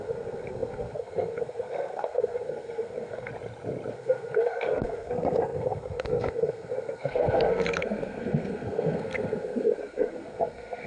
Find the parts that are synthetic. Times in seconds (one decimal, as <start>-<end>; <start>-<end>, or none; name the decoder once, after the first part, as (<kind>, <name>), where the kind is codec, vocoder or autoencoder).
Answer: 0.0-3.3 (codec, SNAC); 3.9-10.9